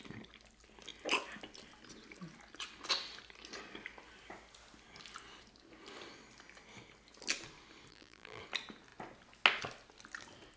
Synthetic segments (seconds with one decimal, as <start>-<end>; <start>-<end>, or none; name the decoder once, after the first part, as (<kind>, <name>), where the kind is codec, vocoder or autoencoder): 7.9-8.4 (vocoder, BigVGAN v2)

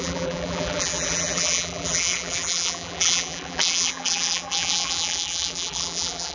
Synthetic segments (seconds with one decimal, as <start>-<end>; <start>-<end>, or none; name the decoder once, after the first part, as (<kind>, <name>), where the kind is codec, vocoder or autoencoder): 0.0-6.3 (vocoder, BigVGAN v2)

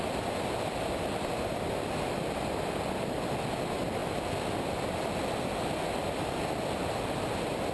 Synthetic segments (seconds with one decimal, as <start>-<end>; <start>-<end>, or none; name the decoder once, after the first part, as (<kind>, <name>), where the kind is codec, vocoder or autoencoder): 0.0-1.3 (vocoder, BigVGAN v2); 2.9-4.0; 4.5-7.7

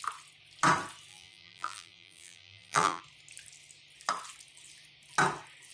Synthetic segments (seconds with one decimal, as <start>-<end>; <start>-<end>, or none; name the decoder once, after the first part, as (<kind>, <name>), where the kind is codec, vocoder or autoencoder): 1.1-3.0 (vocoder, BigVGAN v2)

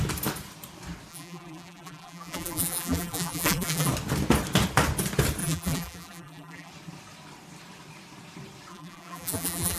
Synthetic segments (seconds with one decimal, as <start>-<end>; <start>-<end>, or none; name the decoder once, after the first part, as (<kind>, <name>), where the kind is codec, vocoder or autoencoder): 1.1-3.9 (vocoder, BigVGAN v2); 5.4-6.7; 8.7-9.8

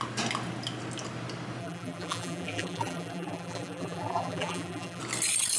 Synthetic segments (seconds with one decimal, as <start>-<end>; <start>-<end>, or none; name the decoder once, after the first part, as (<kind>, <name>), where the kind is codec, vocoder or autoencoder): 1.6-5.0 (vocoder, BigVGAN v2)